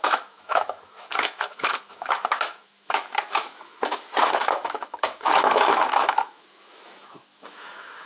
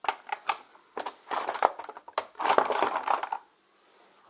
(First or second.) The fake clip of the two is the first